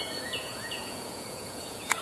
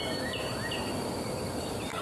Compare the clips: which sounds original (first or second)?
second